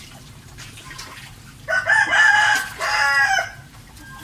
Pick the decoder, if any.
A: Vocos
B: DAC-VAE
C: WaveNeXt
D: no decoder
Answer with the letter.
D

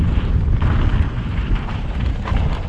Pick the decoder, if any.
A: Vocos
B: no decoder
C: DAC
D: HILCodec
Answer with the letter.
B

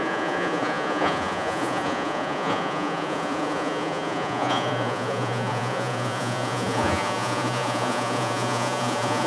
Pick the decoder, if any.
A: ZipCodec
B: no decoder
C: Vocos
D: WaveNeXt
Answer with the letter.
C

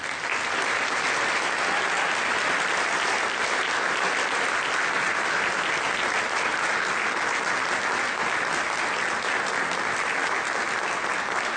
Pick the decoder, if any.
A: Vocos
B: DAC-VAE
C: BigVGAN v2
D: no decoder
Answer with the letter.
D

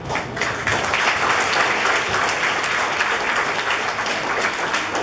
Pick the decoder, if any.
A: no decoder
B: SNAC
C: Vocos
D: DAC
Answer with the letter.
A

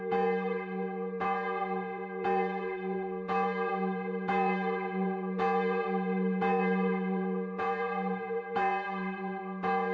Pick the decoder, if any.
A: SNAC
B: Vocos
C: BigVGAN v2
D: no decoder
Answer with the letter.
B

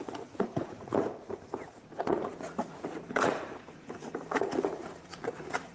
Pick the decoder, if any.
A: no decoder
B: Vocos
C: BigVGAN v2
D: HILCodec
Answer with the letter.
B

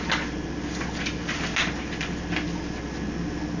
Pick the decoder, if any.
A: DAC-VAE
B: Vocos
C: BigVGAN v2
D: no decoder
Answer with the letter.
D